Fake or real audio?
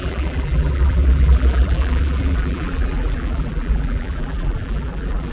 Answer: fake